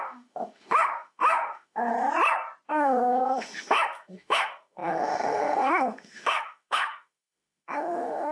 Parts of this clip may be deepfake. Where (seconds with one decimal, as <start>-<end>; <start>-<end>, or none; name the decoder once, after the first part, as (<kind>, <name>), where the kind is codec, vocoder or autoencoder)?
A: 0.0-1.9 (autoencoder, DAC-VAE); 2.7-8.3